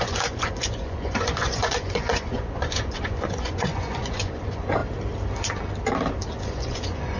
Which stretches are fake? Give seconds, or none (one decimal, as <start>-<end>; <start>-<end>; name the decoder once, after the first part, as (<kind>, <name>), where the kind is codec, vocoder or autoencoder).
0.0-4.8 (vocoder, Vocos); 6.4-7.2